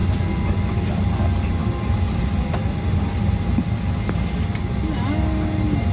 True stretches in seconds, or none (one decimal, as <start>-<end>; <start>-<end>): 0.0-5.9